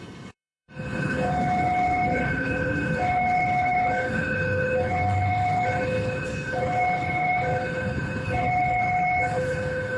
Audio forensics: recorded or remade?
remade